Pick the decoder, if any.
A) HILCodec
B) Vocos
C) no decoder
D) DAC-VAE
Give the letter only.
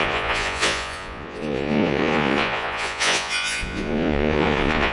B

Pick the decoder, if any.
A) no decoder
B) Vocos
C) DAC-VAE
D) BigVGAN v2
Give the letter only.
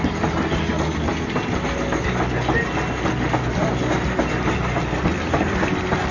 A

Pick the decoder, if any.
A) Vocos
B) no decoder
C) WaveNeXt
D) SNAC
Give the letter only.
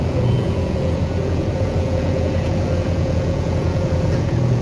A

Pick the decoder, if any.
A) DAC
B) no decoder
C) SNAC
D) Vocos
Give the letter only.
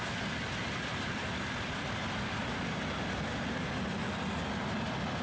B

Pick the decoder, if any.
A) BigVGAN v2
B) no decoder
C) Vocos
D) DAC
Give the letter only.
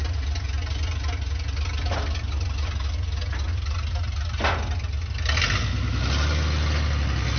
B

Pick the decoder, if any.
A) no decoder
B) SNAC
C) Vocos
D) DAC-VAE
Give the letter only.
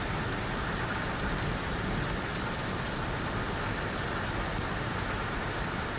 A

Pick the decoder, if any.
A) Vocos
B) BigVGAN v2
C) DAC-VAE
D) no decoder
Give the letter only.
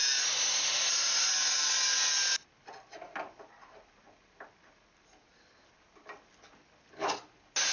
D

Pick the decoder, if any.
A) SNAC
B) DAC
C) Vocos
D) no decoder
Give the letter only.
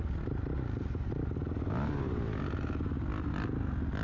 D